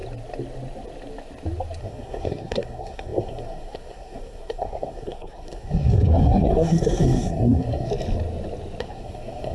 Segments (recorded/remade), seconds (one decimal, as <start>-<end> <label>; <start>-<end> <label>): 0.0-1.8 recorded; 1.8-7.9 remade; 7.9-8.8 recorded; 8.8-9.5 remade